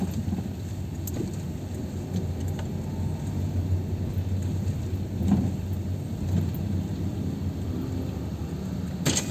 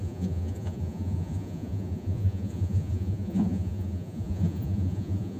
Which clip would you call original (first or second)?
first